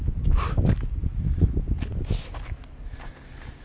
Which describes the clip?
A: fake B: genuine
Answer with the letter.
B